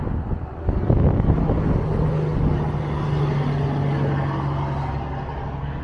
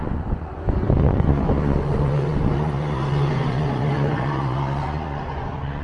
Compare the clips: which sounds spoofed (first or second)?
second